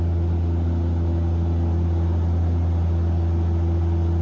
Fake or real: real